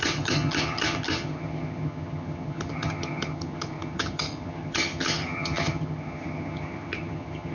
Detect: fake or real fake